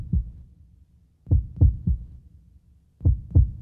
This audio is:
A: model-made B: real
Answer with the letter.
B